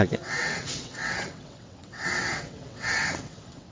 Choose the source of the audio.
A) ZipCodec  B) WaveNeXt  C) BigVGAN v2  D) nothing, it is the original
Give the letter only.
B